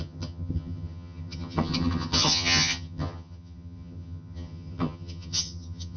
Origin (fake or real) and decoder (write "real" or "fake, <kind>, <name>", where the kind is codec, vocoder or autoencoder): fake, vocoder, HiFi-GAN